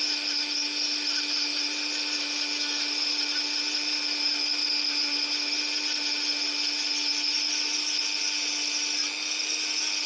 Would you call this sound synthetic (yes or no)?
no